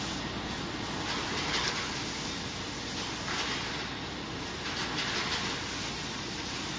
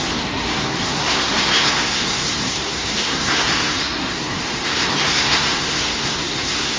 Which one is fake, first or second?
second